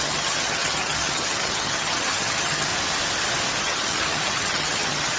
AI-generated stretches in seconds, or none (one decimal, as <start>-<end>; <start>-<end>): 0.0-2.7; 3.6-5.2